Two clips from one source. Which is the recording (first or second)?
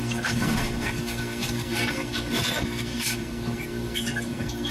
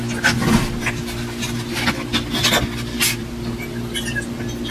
second